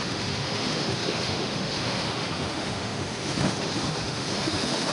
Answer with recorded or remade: remade